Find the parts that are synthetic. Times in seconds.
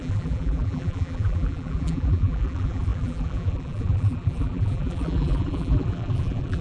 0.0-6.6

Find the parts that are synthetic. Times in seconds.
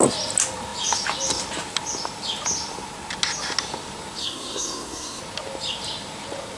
4.2-5.2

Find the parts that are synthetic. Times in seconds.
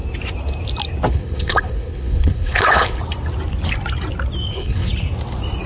1.1-3.0; 4.5-4.9